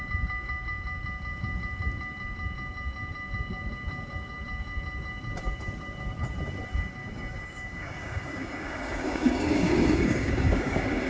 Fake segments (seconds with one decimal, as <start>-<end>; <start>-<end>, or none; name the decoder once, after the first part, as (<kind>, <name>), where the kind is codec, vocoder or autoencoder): 7.0-11.1 (codec, DAC)